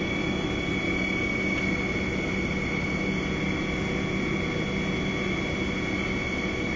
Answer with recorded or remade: recorded